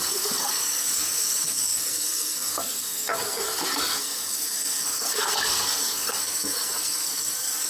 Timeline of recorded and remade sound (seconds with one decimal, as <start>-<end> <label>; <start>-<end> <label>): 0.0-7.7 remade